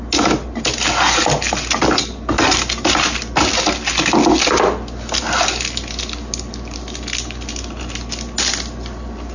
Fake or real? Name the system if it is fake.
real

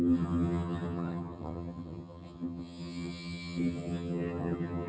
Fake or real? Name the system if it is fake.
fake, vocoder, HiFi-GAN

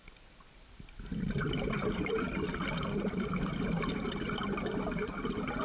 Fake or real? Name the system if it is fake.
real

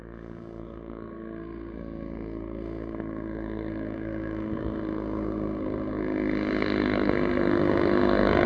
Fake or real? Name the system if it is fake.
fake, codec, SNAC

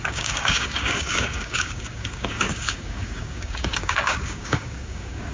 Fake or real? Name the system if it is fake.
fake, codec, DAC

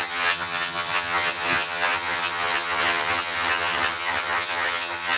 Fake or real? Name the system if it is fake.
fake, vocoder, HiFi-GAN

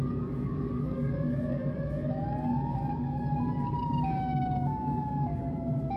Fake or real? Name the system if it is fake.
fake, codec, DAC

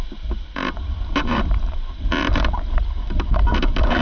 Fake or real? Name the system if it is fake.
fake, vocoder, BigVGAN v2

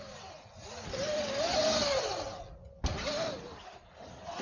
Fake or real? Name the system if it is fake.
real